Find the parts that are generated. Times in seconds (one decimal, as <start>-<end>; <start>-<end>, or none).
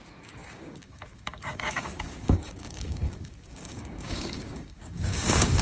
0.0-5.6